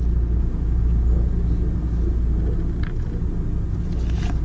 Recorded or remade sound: recorded